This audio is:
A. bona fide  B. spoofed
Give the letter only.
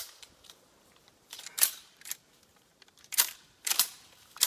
B